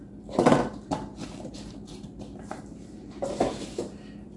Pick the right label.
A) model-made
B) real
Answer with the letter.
A